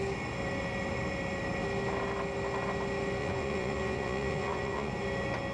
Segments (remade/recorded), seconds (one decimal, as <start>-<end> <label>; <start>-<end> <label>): 0.0-3.2 recorded; 3.2-4.9 remade; 4.9-5.5 recorded